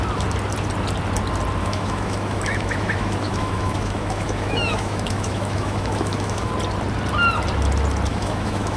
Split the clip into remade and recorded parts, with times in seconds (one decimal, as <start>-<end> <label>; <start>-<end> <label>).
0.0-1.6 recorded; 1.6-6.5 remade; 6.5-8.1 recorded; 8.1-8.8 remade